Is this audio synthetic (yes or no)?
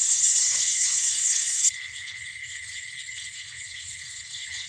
yes